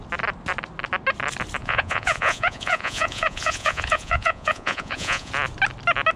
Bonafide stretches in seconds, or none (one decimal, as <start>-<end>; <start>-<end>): 0.0-1.6; 5.3-6.2